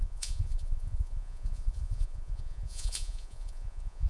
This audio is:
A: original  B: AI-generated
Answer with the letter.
B